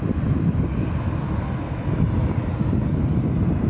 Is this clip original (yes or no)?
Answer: yes